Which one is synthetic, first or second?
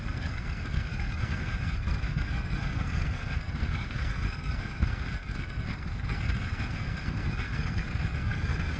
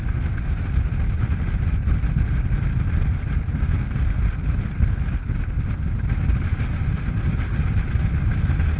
first